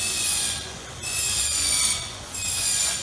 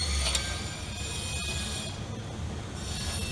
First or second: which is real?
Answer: second